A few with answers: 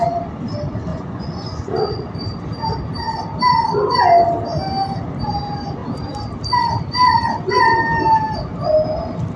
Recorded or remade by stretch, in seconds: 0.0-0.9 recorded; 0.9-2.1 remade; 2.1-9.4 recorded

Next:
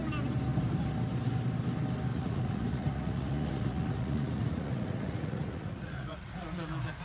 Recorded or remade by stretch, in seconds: 0.0-2.1 recorded; 2.1-6.3 remade; 6.3-7.0 recorded

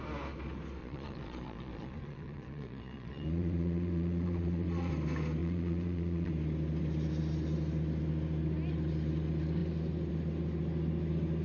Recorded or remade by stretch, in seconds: 0.0-0.8 recorded; 0.8-4.9 remade; 4.9-5.4 recorded; 5.4-6.3 remade; 6.3-11.4 recorded

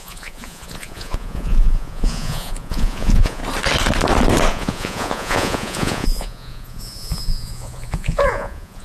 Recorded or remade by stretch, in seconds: 0.0-3.4 remade; 3.4-4.5 recorded; 4.5-8.8 remade

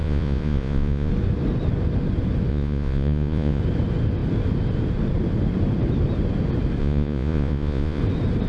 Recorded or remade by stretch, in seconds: 0.0-1.1 remade; 1.1-2.5 recorded; 2.5-3.6 remade; 3.6-6.8 recorded; 6.8-8.0 remade; 8.0-8.5 recorded